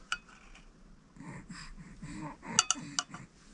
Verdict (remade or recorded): recorded